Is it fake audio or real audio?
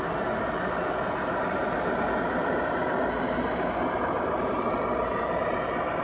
real